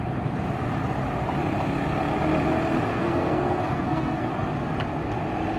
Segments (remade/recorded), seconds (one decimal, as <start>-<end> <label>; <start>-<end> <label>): 0.0-2.9 recorded; 2.9-4.3 remade; 4.3-5.6 recorded